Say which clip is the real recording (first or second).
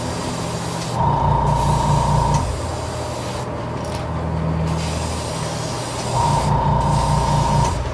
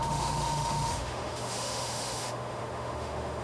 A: first